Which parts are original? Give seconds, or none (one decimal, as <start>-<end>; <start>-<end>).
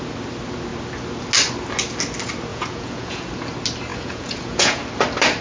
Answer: 0.0-2.5; 3.3-3.9; 4.8-5.4